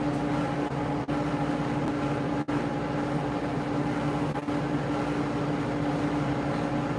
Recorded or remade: recorded